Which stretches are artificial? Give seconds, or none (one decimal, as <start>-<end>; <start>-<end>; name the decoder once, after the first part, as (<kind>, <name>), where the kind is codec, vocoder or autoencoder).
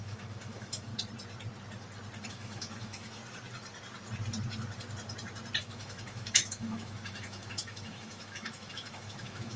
0.0-0.9 (autoencoder, DAC-VAE); 2.3-3.2; 5.6-9.6